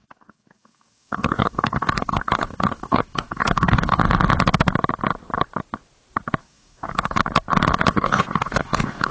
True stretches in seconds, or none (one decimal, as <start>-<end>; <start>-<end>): 4.0-6.4; 7.2-7.9